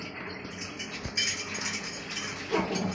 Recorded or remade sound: recorded